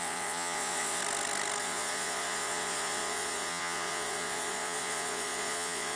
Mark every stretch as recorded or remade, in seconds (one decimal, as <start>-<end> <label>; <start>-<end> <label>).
0.0-1.0 remade; 1.0-1.6 recorded; 1.6-6.0 remade